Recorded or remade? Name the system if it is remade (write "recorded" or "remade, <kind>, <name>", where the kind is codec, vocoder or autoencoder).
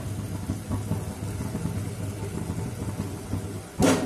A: recorded